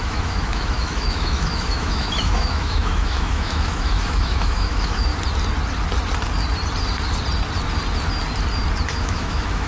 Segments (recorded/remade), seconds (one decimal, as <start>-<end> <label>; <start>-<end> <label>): 0.0-5.1 remade; 5.1-9.0 recorded; 9.0-9.7 remade